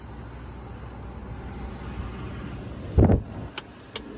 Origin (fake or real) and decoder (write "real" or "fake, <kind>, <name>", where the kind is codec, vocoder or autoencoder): real